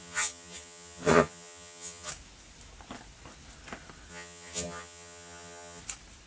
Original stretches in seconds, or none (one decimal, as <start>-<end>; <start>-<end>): 2.1-4.1; 5.8-6.3